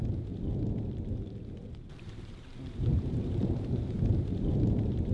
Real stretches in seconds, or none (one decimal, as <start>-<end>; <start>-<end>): 0.0-1.7